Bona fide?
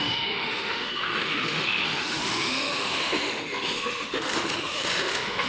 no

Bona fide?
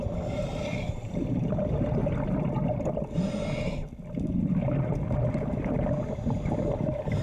yes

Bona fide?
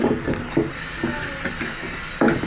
yes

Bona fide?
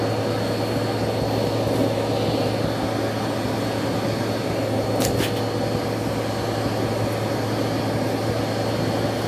yes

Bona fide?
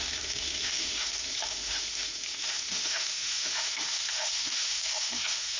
no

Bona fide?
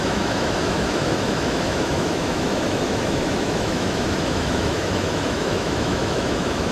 no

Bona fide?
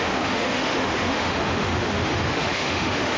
no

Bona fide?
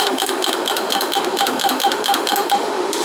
no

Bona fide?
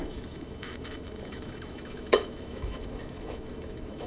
no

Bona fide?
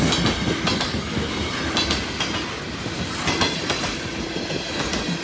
yes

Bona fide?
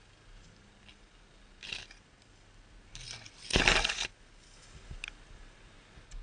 yes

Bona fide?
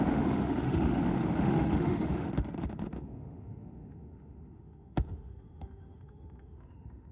no